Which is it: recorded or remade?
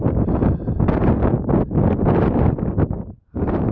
recorded